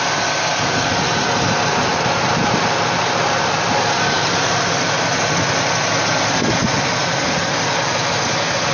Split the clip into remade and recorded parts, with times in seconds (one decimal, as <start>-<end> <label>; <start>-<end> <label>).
0.0-8.7 recorded

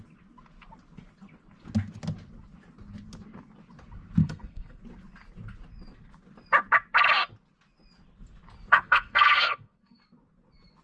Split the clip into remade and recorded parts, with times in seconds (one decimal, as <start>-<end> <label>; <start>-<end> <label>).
0.0-4.2 recorded; 4.2-4.8 remade; 4.8-8.7 recorded; 8.7-10.0 remade; 10.0-10.8 recorded

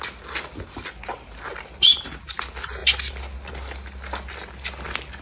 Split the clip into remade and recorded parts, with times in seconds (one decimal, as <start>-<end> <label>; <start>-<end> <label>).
0.0-5.2 recorded